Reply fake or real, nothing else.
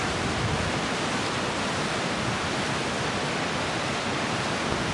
real